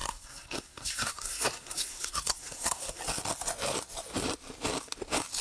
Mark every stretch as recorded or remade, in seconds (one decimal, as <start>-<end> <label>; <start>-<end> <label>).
0.0-3.0 remade; 3.0-5.4 recorded